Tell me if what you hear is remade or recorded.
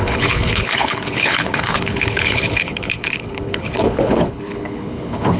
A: remade